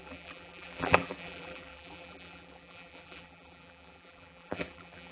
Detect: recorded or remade remade